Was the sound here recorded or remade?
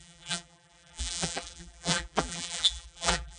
remade